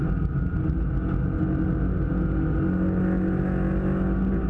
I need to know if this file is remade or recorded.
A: recorded